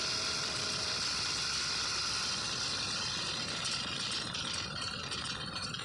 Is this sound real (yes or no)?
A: yes